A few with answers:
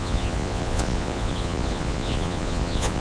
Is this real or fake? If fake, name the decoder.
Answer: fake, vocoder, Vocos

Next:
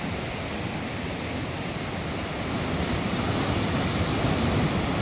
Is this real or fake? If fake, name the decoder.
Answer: real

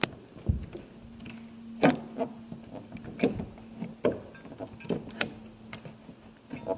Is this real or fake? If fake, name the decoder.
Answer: real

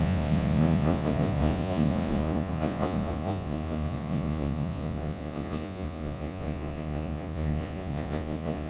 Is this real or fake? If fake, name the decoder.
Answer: fake, vocoder, Vocos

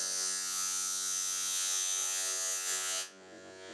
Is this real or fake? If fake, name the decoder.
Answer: fake, vocoder, Vocos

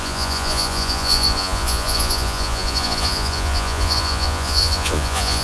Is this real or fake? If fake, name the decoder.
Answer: fake, vocoder, Vocos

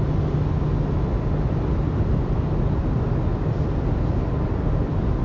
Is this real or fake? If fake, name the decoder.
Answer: real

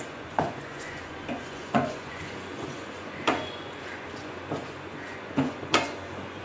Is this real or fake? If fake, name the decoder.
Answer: fake, vocoder, Vocos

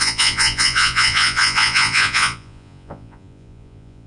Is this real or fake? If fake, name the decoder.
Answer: fake, vocoder, Vocos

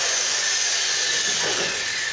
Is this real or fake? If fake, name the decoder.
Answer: fake, vocoder, Vocos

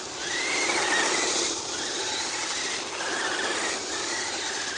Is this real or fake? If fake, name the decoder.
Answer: real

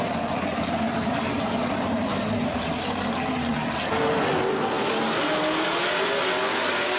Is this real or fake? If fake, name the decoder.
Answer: real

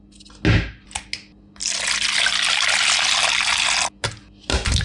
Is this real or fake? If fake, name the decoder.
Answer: real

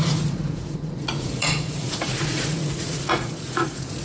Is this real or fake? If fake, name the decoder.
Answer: fake, vocoder, Vocos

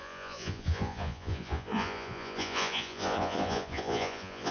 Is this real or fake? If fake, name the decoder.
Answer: fake, vocoder, Vocos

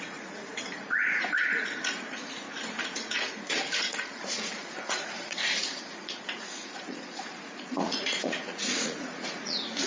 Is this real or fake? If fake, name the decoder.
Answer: fake, vocoder, Vocos